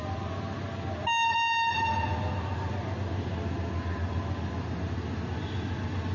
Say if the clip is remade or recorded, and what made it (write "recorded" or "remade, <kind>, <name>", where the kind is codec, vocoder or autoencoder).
recorded